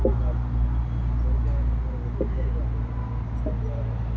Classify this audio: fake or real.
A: real